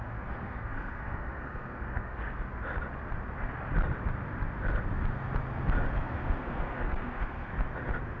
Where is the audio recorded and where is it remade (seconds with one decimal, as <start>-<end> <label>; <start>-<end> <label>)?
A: 0.0-2.2 remade; 2.2-5.9 recorded; 5.9-7.5 remade; 7.5-8.2 recorded